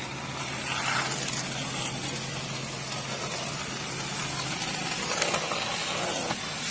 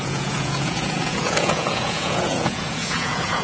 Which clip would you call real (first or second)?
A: first